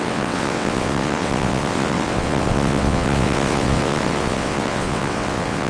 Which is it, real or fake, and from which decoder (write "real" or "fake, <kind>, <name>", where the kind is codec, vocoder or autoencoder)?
fake, vocoder, WaveNeXt